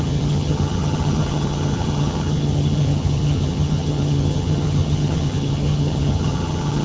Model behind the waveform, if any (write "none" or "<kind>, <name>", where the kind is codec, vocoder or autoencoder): vocoder, HiFi-GAN